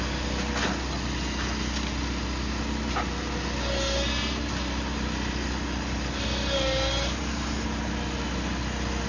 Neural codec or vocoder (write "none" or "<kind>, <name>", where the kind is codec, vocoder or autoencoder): none